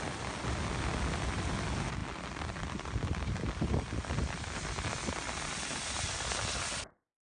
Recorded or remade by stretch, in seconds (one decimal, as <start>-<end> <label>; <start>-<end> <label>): 0.0-2.0 recorded; 2.0-4.6 remade; 4.6-7.3 recorded